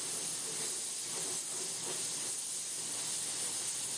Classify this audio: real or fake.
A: real